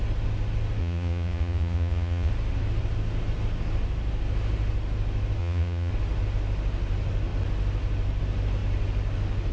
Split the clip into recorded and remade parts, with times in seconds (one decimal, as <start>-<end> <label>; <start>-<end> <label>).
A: 0.0-0.8 recorded; 0.8-2.3 remade; 2.3-5.4 recorded; 5.4-5.9 remade; 5.9-9.5 recorded